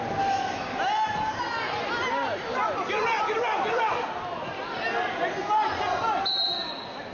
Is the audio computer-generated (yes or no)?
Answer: no